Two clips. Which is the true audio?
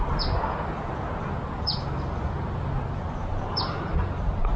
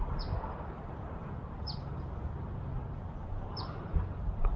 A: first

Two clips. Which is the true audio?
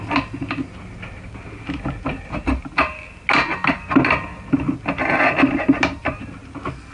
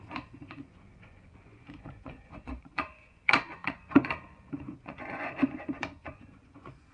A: first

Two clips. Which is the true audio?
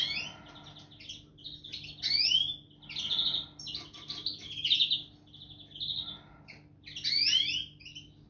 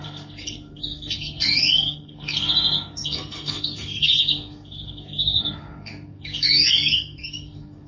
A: first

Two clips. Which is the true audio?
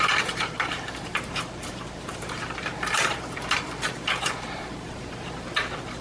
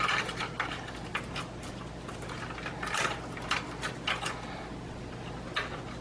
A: second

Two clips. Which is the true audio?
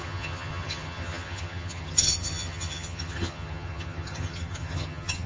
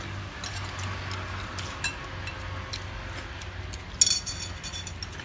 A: second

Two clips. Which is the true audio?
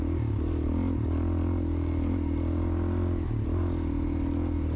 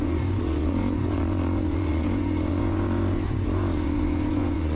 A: first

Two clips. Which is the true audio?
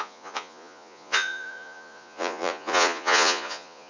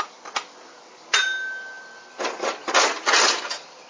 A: second